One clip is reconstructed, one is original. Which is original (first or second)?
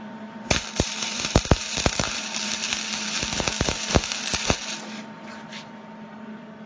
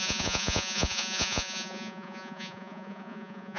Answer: first